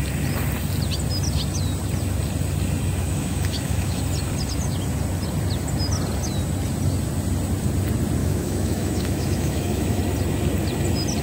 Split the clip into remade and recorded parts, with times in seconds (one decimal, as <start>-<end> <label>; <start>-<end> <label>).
0.0-3.0 recorded; 3.0-4.0 remade; 4.0-8.2 recorded; 8.2-10.0 remade; 10.0-11.2 recorded